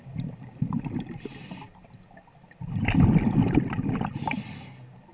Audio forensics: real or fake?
real